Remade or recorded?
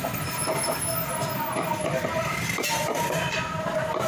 recorded